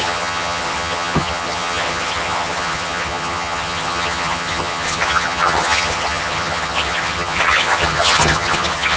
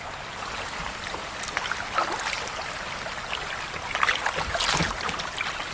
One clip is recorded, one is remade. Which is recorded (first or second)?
second